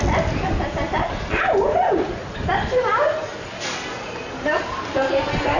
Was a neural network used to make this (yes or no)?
no